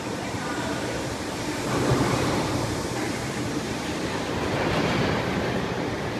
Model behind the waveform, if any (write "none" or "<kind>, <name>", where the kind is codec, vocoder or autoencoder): vocoder, BigVGAN v2